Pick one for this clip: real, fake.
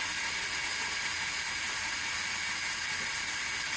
real